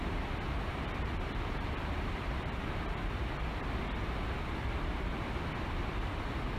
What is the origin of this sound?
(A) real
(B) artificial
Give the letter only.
B